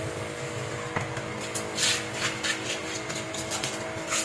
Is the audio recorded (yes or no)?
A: yes